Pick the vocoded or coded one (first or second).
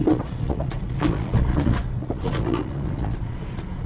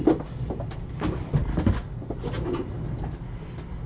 first